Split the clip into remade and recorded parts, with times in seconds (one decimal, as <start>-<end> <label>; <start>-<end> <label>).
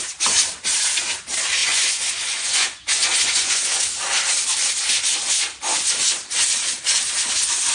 0.0-1.6 recorded; 1.6-3.8 remade; 3.8-7.7 recorded